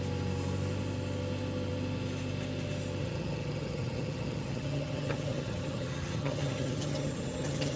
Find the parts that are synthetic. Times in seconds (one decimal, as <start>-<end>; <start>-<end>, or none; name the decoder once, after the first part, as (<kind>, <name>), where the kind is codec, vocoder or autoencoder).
3.0-7.8 (vocoder, HiFi-GAN)